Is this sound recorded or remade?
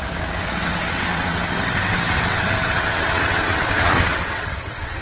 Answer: remade